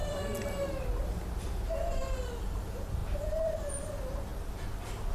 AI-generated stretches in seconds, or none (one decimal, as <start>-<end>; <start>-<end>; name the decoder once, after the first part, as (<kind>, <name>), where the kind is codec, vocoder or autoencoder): 0.0-1.1 (vocoder, BigVGAN v2); 3.0-3.7; 4.3-5.1